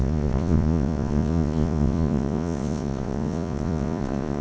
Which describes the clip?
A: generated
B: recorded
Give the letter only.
A